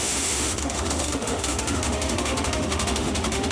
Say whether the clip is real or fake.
fake